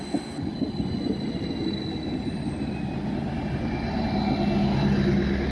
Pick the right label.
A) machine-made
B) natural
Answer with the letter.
B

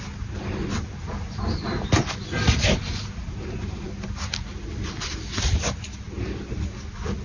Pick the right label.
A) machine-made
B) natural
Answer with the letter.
B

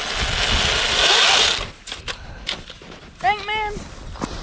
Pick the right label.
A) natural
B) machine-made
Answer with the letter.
A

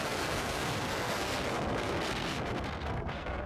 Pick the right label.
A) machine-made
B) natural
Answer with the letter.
A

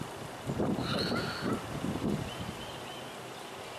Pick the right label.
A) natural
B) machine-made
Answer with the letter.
A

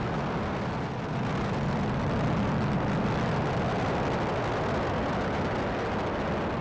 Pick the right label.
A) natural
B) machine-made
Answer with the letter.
A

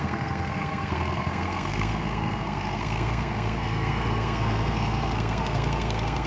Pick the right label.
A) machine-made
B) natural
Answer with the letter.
A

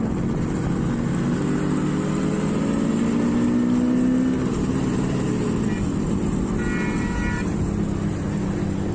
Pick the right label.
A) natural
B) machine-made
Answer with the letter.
A